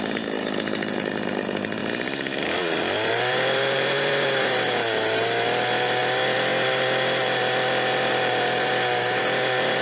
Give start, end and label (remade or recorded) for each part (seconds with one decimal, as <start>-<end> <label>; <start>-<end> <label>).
0.0-1.8 remade; 1.8-3.1 recorded; 3.1-9.8 remade